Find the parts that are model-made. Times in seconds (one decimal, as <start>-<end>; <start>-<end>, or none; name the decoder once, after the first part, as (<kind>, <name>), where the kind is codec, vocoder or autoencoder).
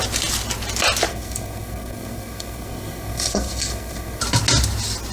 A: 1.1-4.2 (codec, SNAC)